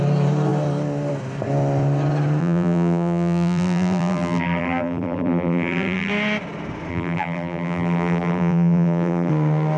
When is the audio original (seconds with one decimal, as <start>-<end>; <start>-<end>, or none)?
0.0-2.4; 6.1-6.9; 9.3-9.8